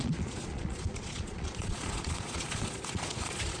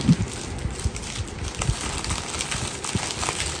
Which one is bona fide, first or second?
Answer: second